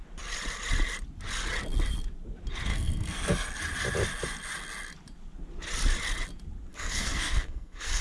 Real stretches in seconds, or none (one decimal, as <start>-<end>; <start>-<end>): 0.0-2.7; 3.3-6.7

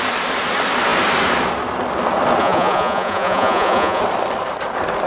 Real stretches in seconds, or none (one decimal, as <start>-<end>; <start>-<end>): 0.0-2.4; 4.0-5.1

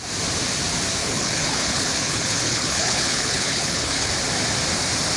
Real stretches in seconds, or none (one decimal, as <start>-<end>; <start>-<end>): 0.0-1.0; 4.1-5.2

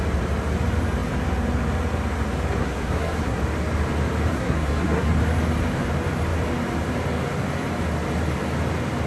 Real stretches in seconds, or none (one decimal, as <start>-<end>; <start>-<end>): 0.0-2.6; 3.4-4.3; 5.2-9.1

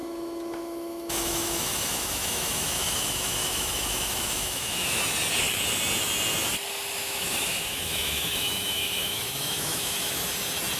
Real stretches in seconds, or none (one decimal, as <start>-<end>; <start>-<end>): 5.0-7.0; 10.3-10.8

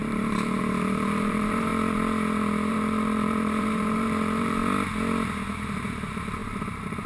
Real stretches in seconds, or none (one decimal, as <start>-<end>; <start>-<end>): 1.7-2.7; 4.6-5.8

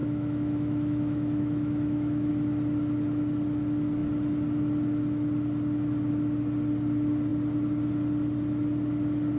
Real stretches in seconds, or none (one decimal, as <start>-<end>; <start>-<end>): 2.3-9.4

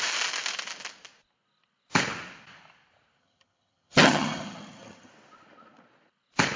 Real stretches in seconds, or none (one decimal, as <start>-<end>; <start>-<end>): 0.0-3.2; 5.1-6.6